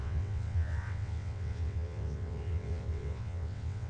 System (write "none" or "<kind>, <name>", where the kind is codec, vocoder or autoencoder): vocoder, WaveNeXt